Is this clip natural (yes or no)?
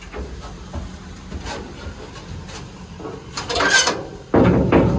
yes